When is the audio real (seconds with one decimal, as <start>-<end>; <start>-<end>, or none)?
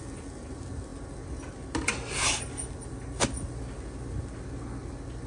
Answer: 0.0-5.3